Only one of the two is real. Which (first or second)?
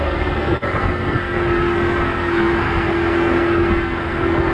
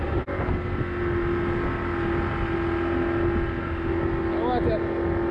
second